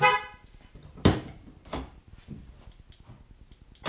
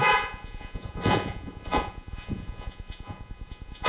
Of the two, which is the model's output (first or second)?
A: second